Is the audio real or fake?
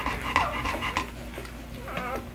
real